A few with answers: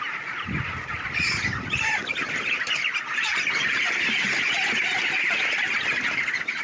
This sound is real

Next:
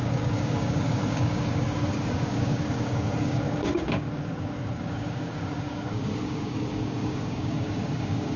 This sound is fake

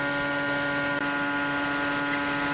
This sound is real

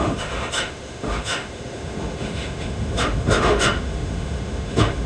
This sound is fake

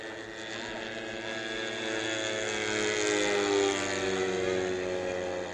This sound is real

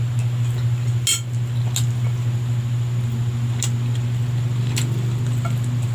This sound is real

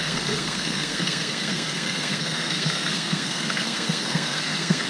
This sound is fake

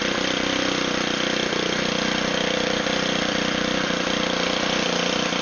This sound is real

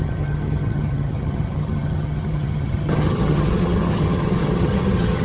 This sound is fake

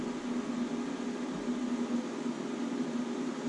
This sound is real